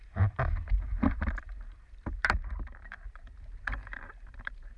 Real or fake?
fake